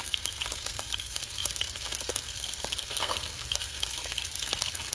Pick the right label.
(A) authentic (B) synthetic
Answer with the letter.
B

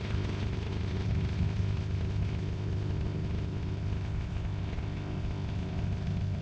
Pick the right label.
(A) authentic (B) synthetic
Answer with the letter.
B